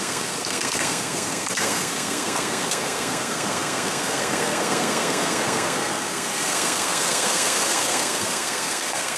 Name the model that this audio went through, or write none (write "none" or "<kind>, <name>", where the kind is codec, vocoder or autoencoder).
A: codec, SNAC